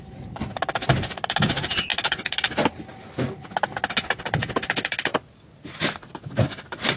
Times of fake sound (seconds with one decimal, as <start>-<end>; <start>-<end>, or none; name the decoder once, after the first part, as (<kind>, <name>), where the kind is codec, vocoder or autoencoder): none